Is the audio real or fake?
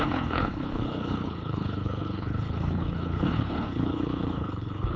fake